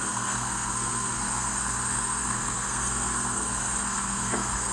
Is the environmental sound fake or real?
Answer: fake